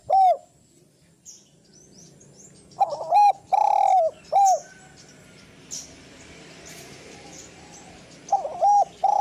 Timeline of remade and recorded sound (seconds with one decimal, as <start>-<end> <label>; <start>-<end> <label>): 0.0-9.2 recorded

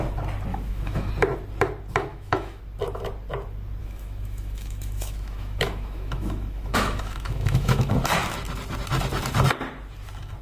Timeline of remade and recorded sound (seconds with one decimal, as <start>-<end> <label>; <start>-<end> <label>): 0.0-0.5 recorded; 0.5-1.1 remade; 1.1-2.1 recorded; 2.1-2.6 remade; 2.6-3.8 recorded; 3.8-7.9 remade; 7.9-10.4 recorded

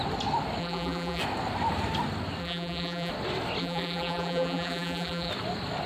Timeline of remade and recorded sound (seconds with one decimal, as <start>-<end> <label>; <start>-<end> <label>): 0.0-0.6 recorded; 0.6-1.2 remade; 1.2-2.4 recorded; 2.4-3.1 remade; 3.1-3.6 recorded; 3.6-5.3 remade; 5.3-5.9 recorded

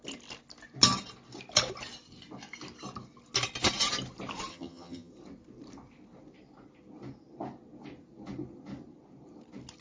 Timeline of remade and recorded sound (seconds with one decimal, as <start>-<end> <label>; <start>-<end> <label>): 0.0-4.5 recorded; 4.5-5.1 remade; 5.1-9.8 recorded

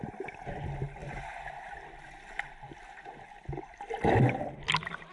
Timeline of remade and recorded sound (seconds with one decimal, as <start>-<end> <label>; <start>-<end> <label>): 0.0-5.1 recorded

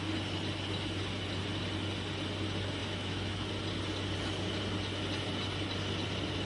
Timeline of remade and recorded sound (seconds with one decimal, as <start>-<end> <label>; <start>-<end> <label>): 0.0-2.8 recorded; 2.8-3.5 remade; 3.5-6.5 recorded

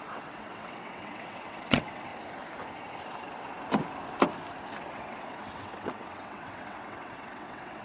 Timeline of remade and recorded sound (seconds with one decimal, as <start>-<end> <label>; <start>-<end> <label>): 0.0-2.1 remade; 2.1-4.9 recorded; 4.9-7.8 remade